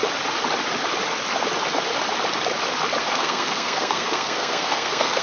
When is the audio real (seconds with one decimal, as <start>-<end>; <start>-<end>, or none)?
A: 0.0-3.0